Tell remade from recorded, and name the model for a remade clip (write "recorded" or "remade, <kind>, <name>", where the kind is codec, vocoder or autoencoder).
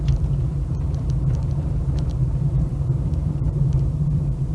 remade, vocoder, BigVGAN v2